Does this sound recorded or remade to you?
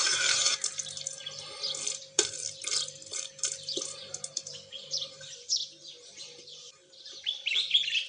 remade